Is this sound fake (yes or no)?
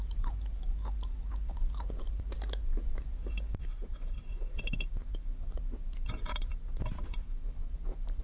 yes